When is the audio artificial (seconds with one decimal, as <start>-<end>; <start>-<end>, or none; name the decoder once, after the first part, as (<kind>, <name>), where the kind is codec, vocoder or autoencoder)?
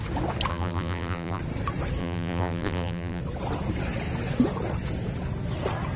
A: 0.5-1.4 (vocoder, BigVGAN v2); 2.0-3.2